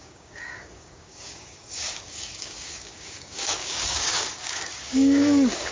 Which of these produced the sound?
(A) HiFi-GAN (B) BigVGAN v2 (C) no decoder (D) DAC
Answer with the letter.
D